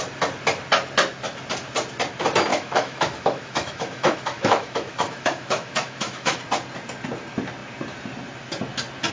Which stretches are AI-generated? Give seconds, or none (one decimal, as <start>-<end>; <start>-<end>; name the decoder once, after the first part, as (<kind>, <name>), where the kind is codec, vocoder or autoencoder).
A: 2.5-6.4 (autoencoder, DAC-VAE)